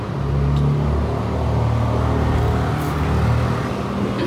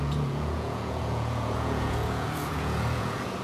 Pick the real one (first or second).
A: first